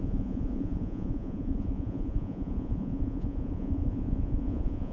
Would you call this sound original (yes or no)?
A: no